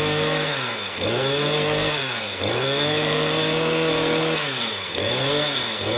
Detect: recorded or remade remade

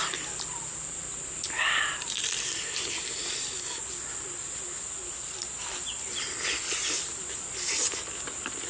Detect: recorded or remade recorded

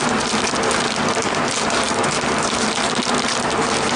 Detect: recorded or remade recorded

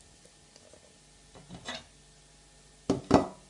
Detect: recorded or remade recorded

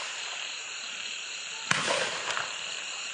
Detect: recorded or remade remade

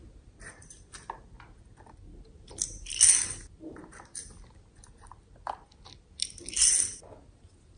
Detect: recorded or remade recorded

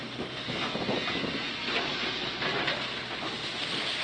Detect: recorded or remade recorded